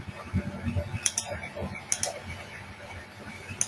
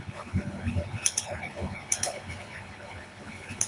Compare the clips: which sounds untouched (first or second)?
first